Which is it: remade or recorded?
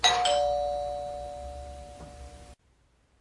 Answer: recorded